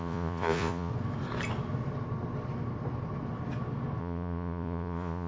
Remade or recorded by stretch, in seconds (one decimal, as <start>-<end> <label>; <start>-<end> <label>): 0.0-0.9 remade; 0.9-4.0 recorded; 4.0-5.3 remade